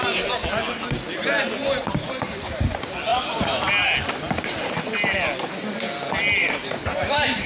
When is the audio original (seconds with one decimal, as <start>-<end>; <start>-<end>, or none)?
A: 0.0-1.8; 2.3-3.1; 3.7-6.4